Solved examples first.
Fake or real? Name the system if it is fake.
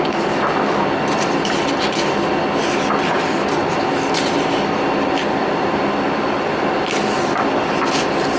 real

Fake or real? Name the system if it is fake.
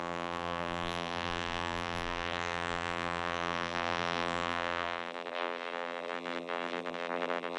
fake, vocoder, BigVGAN v2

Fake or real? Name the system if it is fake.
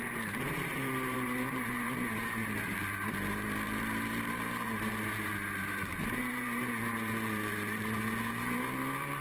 fake, vocoder, BigVGAN v2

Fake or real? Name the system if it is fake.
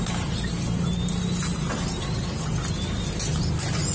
real